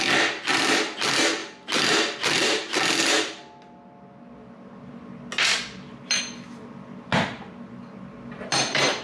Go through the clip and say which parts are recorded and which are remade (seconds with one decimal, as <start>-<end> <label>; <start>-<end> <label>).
0.0-9.0 recorded